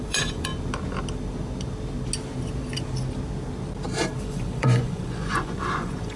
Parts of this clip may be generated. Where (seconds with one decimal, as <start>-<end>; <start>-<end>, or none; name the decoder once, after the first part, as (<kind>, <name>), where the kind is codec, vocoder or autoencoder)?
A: 0.0-0.5 (vocoder, Vocos); 4.2-6.2